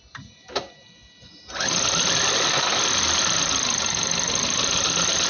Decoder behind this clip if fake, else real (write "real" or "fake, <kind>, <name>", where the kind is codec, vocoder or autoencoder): real